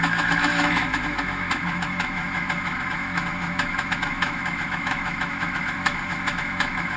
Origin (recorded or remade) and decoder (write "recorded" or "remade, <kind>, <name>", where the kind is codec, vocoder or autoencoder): remade, autoencoder, DAC-VAE